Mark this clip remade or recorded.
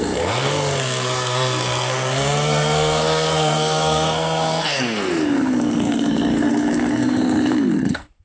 remade